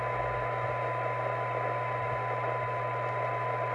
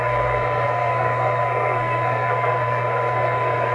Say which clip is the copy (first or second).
second